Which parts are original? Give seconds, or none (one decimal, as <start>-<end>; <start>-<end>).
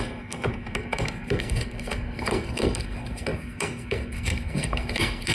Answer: none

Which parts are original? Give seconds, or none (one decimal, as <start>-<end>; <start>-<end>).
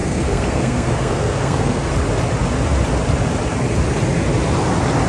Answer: 1.9-5.1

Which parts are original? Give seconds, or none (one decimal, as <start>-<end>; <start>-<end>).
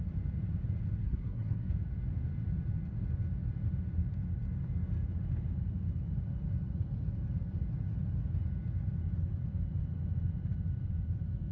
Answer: 0.0-1.0; 1.7-11.5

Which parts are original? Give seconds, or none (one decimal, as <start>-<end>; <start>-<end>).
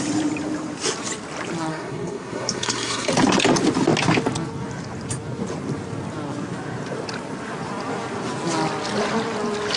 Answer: 0.0-1.7; 3.1-9.8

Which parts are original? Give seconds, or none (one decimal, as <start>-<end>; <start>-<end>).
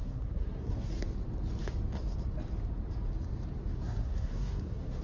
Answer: 0.9-3.7